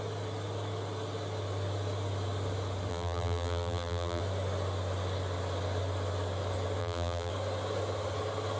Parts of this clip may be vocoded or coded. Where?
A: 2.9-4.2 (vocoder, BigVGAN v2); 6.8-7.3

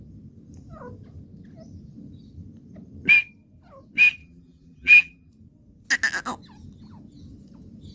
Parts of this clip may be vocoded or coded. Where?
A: 4.2-5.3 (vocoder, BigVGAN v2)

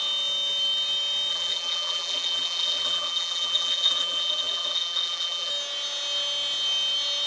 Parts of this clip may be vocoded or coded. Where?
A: 1.3-5.5 (vocoder, BigVGAN v2)

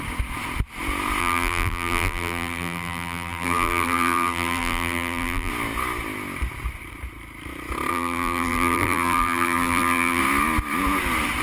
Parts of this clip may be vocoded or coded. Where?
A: 1.2-5.5 (vocoder, BigVGAN v2); 7.9-10.2